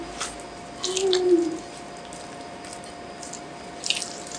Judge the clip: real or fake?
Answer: real